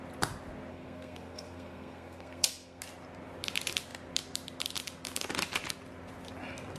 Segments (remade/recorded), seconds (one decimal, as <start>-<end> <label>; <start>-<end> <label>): 0.0-0.7 recorded; 0.7-2.8 remade; 2.8-6.8 recorded